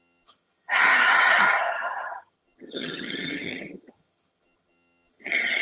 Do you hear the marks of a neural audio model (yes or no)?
yes